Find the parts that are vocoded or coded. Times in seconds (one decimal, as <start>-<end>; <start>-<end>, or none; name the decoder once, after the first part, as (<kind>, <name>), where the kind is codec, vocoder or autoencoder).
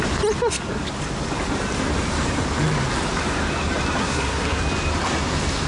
4.0-4.6 (codec, SNAC)